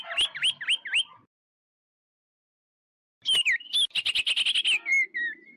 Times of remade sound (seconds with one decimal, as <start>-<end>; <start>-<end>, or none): none